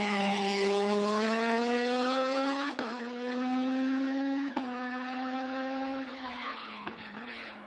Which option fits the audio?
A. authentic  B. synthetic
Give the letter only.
B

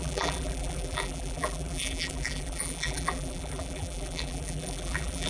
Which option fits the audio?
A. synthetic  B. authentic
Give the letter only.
A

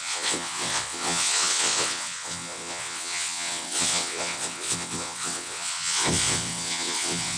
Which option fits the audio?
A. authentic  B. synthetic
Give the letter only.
B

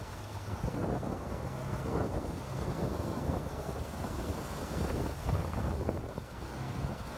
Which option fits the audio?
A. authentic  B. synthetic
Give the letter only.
B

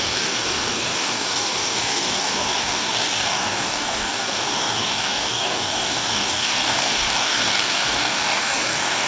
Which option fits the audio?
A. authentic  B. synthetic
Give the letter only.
B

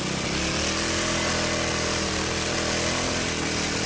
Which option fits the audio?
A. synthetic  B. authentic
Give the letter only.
B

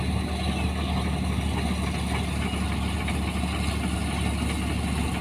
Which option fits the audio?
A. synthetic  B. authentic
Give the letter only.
B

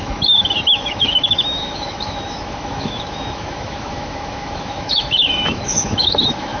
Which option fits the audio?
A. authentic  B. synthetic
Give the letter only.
B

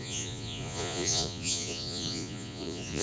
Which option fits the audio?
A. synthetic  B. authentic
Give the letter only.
A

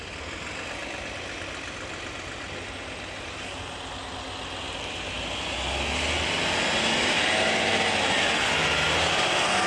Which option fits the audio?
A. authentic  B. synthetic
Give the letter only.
A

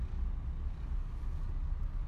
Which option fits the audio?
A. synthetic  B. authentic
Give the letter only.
B